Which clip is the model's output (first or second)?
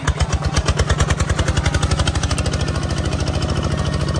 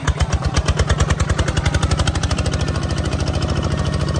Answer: second